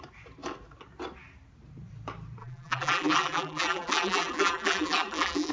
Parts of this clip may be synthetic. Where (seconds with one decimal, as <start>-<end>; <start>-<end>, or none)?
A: 2.4-5.5